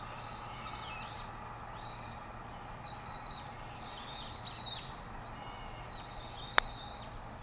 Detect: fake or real real